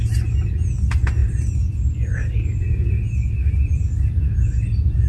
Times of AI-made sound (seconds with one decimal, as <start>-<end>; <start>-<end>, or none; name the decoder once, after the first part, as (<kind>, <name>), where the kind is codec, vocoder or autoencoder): none